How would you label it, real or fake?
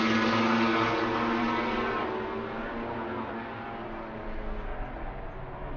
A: real